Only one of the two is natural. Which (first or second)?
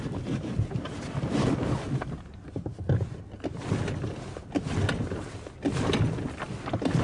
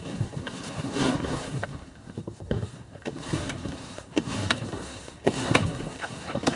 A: first